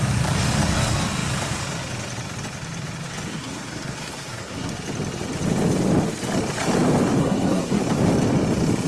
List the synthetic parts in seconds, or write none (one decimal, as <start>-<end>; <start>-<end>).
3.3-4.7; 7.2-7.8

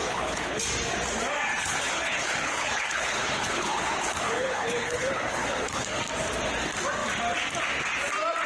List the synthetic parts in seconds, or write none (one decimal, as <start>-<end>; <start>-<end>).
0.0-0.6; 1.6-6.0

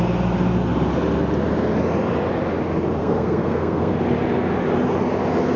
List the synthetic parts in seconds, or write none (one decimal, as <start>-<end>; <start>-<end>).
3.0-3.9

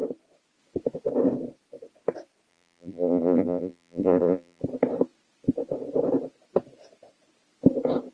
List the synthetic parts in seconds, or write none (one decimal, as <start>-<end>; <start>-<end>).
2.5-4.6

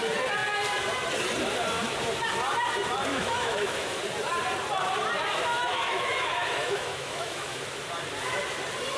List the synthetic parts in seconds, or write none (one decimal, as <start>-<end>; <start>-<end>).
3.1-4.0; 5.5-7.6

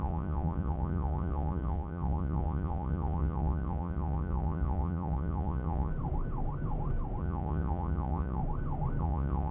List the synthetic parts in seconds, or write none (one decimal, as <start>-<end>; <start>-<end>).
0.0-5.9; 7.2-8.4; 9.0-9.5